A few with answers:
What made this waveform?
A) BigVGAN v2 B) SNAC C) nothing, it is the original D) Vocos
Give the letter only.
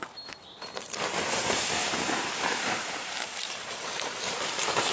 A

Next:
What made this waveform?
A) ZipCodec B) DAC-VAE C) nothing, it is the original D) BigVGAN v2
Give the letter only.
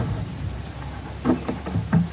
C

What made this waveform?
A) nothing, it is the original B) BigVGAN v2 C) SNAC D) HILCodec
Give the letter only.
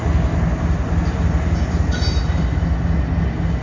A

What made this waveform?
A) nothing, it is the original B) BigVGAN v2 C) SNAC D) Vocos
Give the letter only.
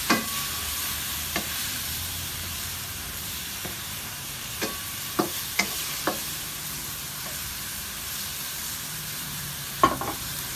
B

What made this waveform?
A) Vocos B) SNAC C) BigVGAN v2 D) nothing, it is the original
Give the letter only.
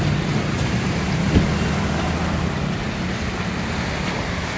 D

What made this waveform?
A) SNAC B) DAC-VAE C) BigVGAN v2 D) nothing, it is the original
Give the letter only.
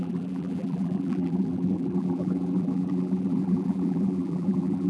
C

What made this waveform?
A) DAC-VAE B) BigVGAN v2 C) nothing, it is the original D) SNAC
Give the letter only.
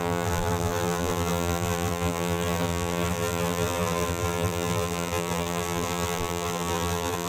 B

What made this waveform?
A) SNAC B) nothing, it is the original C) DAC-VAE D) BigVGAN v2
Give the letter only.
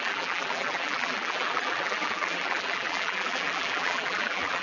D